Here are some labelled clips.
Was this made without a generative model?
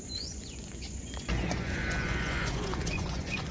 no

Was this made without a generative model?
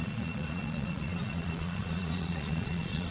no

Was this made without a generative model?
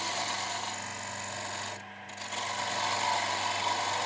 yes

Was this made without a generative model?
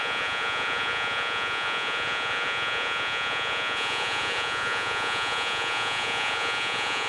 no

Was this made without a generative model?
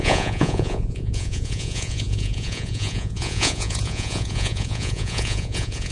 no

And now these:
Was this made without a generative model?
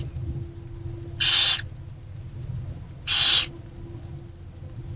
yes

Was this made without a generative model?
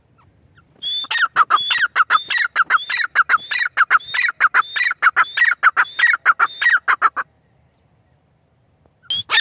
yes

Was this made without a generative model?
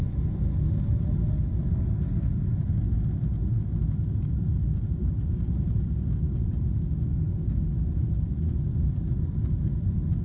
yes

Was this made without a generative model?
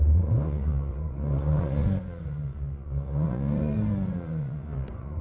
no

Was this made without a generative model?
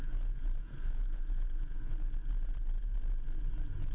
no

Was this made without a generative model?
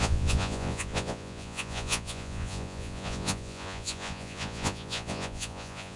no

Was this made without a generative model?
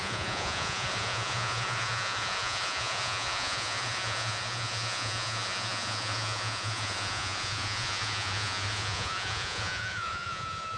no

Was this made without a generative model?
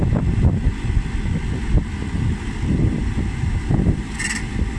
yes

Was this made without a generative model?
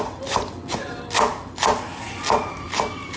yes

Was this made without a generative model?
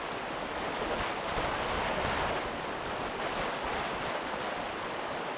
yes